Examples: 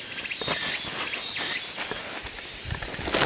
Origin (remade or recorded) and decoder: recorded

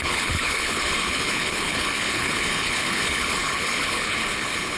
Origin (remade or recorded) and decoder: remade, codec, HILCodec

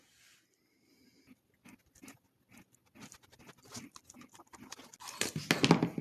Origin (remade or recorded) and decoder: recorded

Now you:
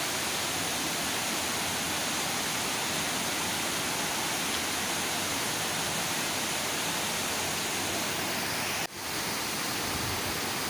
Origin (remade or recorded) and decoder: recorded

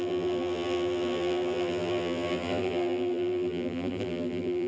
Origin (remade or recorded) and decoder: remade, vocoder, BigVGAN v2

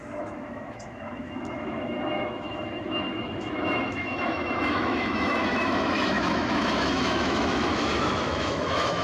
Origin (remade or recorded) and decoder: remade, autoencoder, DAC-VAE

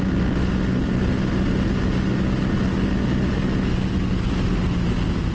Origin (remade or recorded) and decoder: recorded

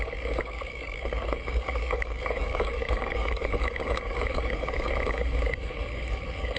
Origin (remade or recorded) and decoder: remade, codec, DAC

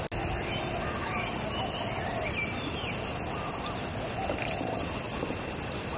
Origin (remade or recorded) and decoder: recorded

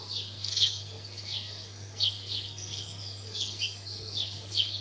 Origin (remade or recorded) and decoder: remade, codec, SNAC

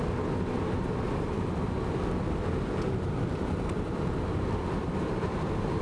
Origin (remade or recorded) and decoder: remade, vocoder, BigVGAN v2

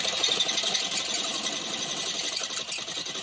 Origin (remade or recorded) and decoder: recorded